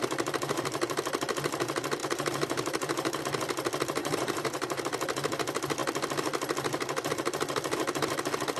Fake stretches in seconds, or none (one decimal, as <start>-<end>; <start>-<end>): 2.0-3.2; 4.0-4.8